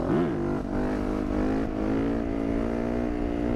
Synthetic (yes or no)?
no